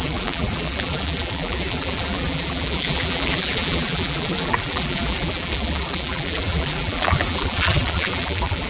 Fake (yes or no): yes